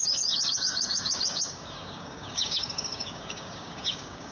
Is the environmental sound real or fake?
fake